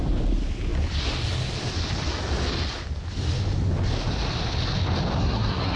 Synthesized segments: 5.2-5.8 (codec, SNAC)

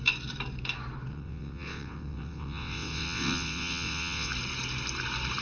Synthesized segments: 1.1-4.3 (vocoder, WaveNeXt)

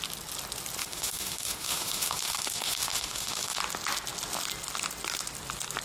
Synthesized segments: 0.8-3.6 (autoencoder, DAC-VAE)

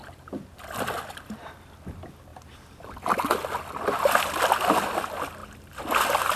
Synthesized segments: none